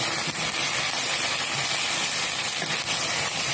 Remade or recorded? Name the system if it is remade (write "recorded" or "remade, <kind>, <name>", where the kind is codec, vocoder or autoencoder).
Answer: recorded